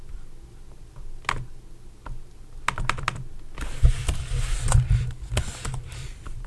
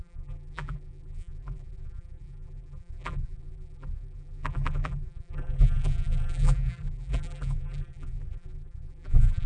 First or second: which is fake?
second